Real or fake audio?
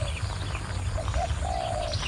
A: real